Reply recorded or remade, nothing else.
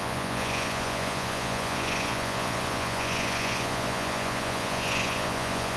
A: remade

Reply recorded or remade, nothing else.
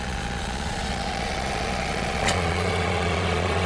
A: remade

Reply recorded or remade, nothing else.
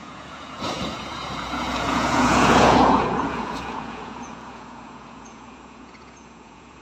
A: remade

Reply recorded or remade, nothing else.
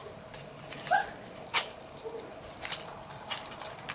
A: recorded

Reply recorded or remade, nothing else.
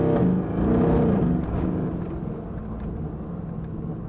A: recorded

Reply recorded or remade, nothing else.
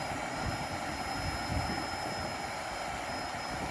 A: recorded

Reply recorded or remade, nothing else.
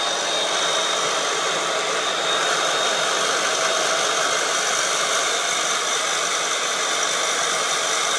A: recorded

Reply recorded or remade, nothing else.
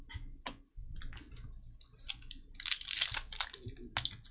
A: recorded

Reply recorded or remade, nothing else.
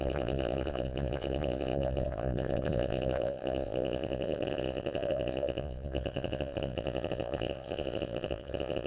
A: remade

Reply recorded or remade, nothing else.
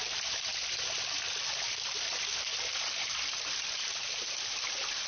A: recorded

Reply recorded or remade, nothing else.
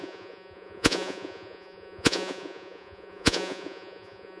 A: remade